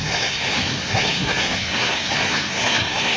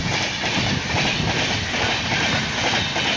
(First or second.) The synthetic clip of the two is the first